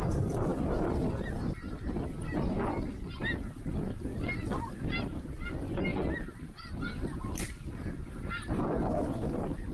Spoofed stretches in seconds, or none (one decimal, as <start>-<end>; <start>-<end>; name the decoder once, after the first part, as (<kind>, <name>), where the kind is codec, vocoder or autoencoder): none